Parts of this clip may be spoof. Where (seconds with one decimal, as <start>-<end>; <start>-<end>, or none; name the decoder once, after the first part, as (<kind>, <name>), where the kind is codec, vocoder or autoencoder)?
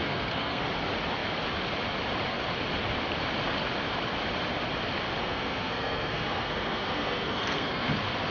0.0-0.6 (codec, SNAC); 5.2-7.9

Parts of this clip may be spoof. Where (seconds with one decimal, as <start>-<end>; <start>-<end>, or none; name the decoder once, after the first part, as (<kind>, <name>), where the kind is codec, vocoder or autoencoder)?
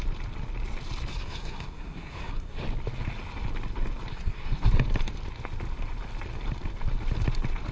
1.1-2.6 (codec, SNAC); 4.1-4.7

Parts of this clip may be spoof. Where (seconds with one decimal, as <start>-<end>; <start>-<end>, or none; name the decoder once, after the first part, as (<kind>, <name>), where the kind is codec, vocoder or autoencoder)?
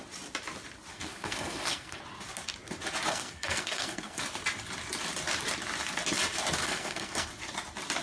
0.9-2.0 (codec, SNAC); 3.1-4.2; 6.6-7.3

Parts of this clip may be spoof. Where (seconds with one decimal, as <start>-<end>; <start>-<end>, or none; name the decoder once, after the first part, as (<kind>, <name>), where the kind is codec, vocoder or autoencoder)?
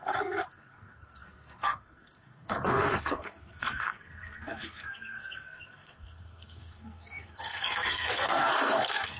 0.0-9.2 (codec, SNAC)